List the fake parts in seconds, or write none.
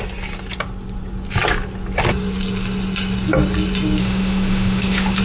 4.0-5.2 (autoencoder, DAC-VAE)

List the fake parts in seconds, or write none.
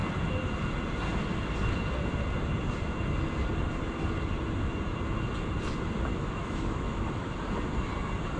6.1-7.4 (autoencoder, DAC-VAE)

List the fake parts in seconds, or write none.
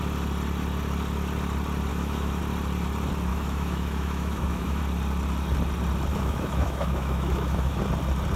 1.9-2.4 (autoencoder, DAC-VAE); 3.3-4.8; 6.1-7.8